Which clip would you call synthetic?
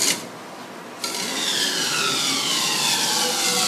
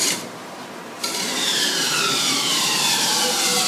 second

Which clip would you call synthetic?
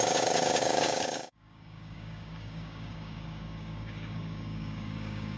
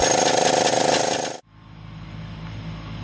first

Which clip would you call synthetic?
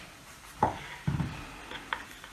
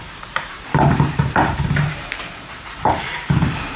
second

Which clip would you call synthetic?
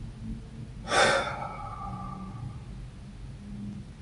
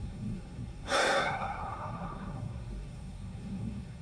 second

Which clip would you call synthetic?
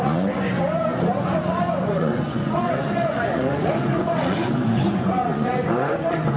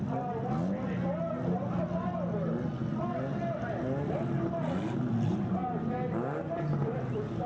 first